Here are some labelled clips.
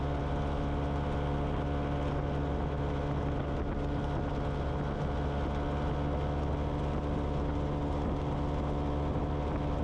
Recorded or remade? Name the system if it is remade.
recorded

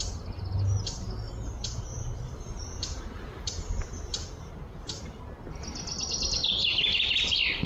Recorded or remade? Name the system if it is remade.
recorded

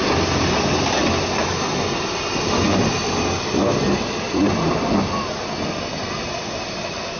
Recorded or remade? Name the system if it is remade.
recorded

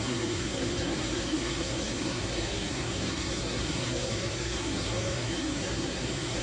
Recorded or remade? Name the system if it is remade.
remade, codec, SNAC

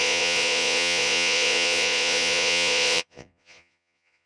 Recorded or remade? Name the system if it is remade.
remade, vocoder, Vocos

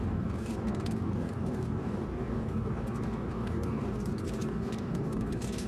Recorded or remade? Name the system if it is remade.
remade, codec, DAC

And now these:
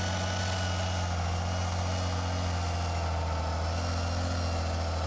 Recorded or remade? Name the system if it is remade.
recorded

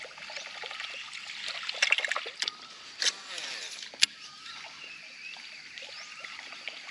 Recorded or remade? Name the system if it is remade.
recorded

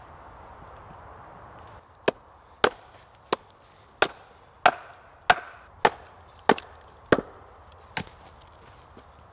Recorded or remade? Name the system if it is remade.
recorded